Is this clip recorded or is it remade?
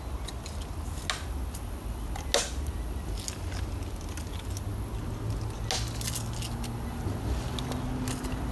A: recorded